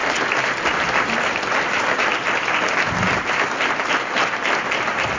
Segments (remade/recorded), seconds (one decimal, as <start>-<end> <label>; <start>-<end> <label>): 0.0-5.2 recorded